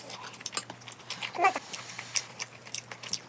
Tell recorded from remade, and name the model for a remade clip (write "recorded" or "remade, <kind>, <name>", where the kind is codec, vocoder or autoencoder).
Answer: recorded